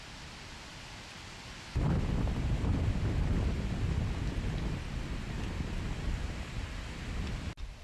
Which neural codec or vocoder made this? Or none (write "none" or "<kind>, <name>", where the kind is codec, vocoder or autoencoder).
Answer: none